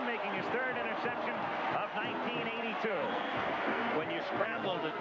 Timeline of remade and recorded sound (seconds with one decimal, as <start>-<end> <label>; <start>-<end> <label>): 0.0-2.9 recorded; 2.9-3.8 remade; 3.8-4.4 recorded; 4.4-5.0 remade